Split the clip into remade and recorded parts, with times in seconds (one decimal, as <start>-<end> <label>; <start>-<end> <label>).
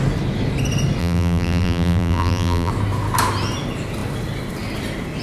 0.0-1.0 recorded; 1.0-2.7 remade; 2.7-5.2 recorded